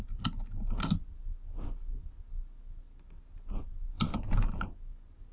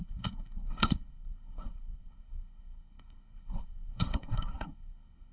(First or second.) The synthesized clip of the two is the second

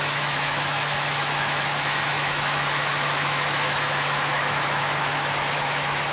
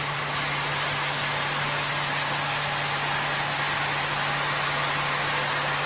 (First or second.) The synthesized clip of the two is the first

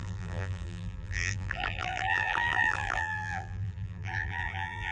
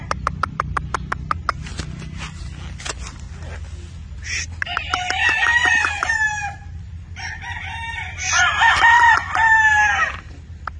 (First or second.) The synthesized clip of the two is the first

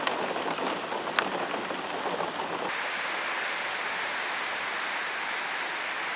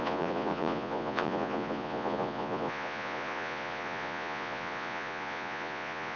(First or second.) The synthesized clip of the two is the second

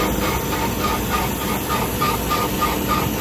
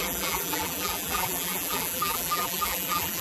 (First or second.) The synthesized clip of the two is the second